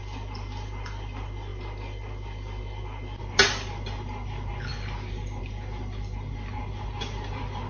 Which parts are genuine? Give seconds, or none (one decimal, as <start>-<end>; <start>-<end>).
0.0-7.7